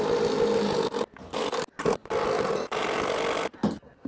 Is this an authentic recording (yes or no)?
yes